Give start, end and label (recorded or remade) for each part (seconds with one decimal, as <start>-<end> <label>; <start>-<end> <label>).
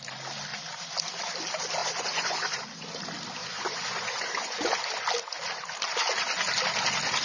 0.0-1.8 recorded; 1.8-2.6 remade; 2.6-3.4 recorded; 3.4-4.7 remade; 4.7-7.2 recorded